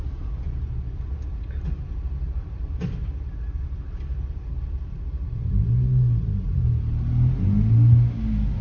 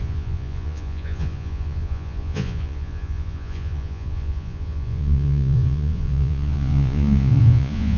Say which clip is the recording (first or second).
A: first